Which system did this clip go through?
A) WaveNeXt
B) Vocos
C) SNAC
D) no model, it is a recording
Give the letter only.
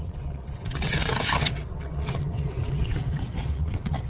A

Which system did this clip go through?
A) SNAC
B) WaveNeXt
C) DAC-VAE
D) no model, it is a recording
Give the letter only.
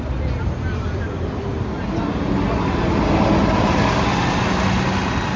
D